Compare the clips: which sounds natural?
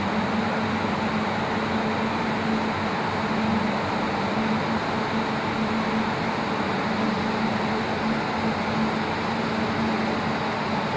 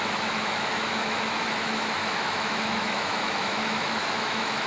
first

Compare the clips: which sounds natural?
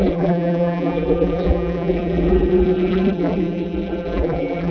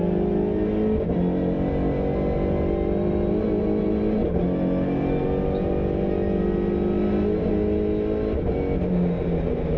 second